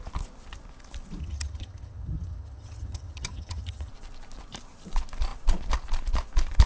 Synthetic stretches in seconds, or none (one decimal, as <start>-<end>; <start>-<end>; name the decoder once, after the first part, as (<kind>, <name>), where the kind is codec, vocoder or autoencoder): 1.2-3.9 (vocoder, HiFi-GAN)